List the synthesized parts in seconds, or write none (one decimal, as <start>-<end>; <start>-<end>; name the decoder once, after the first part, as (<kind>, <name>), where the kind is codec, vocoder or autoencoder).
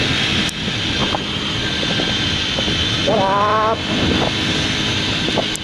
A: none